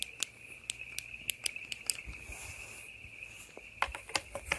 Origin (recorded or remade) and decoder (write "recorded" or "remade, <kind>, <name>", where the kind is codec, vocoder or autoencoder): recorded